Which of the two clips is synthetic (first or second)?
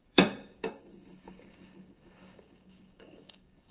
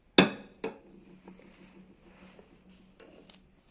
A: first